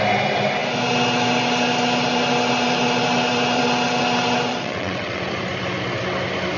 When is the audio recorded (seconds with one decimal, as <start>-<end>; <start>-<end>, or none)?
0.0-4.5; 5.2-6.6

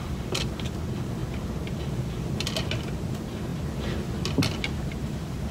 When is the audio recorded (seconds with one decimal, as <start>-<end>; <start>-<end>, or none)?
0.0-5.5

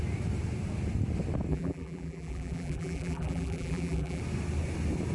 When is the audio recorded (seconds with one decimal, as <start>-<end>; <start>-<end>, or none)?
0.0-1.5; 4.2-5.1

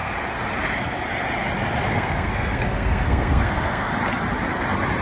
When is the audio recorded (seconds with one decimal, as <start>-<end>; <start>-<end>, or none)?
0.0-1.9; 3.9-5.0

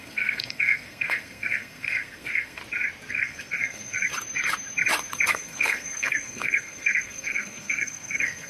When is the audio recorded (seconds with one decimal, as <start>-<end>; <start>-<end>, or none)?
2.6-3.1; 4.1-5.3

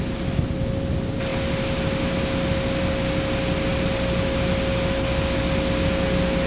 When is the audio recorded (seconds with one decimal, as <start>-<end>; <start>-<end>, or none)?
0.0-6.5

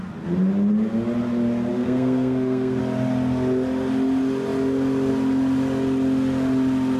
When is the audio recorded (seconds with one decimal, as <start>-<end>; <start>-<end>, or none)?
0.0-1.7; 2.8-7.0

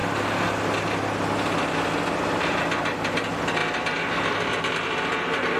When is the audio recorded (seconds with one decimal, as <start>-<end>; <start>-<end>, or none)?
0.0-5.6